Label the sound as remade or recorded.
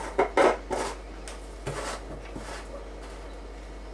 recorded